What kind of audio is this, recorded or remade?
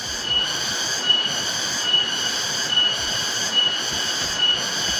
recorded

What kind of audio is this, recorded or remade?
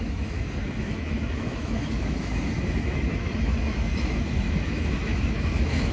remade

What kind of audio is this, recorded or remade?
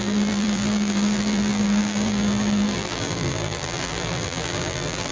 remade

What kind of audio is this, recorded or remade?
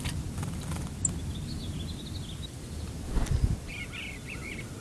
recorded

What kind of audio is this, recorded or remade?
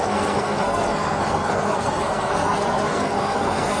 remade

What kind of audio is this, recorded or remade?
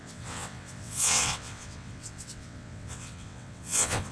remade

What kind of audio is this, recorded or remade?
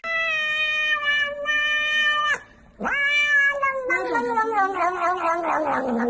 recorded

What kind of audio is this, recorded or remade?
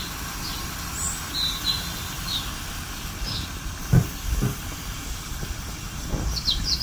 recorded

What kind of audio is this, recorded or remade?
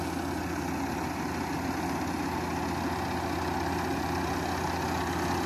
recorded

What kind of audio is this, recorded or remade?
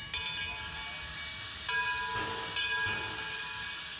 recorded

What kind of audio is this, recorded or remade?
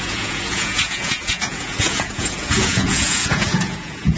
remade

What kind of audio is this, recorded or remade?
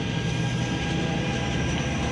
recorded